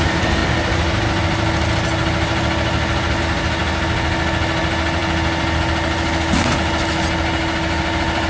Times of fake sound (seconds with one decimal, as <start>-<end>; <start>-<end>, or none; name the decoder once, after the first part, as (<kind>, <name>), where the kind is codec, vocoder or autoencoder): none